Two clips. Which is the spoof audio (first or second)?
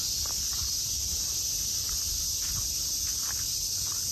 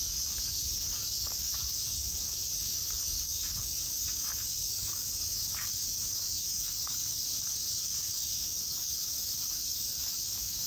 second